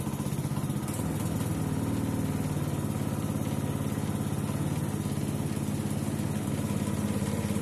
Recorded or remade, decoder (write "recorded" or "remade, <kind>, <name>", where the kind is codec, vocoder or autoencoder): recorded